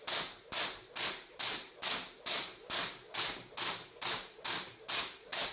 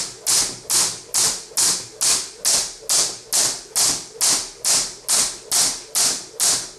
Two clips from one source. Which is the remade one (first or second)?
first